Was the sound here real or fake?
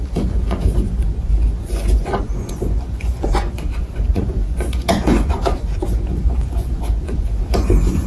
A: fake